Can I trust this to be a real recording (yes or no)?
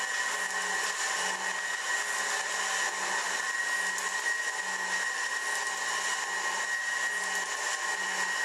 yes